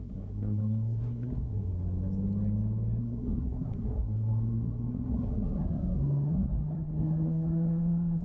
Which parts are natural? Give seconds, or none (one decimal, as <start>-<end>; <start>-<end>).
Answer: 1.7-3.0